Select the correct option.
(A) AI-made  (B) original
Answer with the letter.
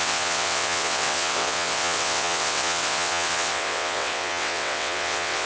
A